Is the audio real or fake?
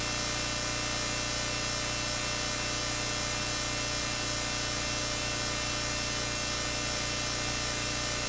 real